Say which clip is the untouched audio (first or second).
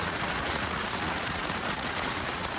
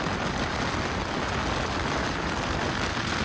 second